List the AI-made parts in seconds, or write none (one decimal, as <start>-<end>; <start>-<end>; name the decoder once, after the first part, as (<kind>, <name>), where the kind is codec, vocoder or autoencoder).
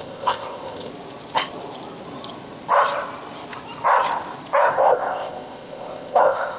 0.0-0.9 (codec, ZipCodec); 4.7-6.6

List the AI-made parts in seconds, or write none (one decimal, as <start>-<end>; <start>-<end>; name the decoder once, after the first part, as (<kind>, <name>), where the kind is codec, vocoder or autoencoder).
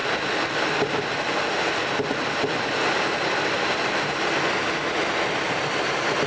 none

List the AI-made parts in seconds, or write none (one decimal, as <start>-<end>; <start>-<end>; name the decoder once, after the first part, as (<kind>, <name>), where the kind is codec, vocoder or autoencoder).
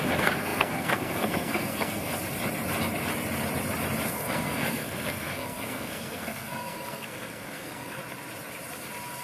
0.0-2.1 (codec, SNAC); 4.1-8.0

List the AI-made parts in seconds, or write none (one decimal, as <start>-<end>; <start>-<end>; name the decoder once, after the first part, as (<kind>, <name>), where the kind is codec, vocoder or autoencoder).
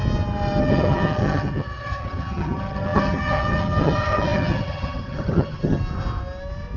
0.6-5.8 (vocoder, HiFi-GAN)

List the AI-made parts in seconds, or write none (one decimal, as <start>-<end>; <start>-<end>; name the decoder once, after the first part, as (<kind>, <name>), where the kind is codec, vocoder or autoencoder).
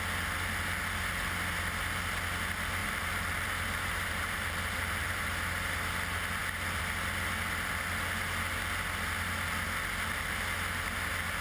2.8-5.7 (vocoder, BigVGAN v2)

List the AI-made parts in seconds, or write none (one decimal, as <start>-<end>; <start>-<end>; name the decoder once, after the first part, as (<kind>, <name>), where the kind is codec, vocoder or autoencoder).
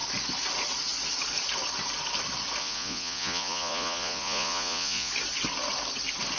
2.6-5.1 (vocoder, Vocos)